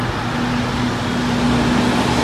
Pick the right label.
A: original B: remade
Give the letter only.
A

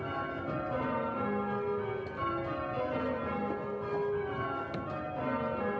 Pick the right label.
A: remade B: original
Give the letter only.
B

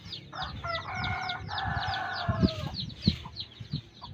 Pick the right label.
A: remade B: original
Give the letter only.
A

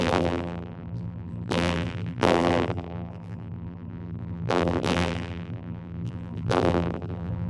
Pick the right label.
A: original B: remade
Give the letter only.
B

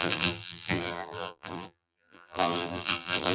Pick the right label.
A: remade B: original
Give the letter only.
A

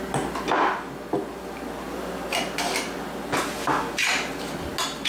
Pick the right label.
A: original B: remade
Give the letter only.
A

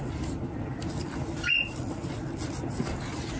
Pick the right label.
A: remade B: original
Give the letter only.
B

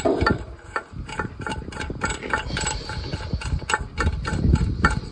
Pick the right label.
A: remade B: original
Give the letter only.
A